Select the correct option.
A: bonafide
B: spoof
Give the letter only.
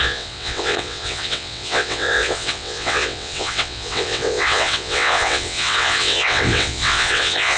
B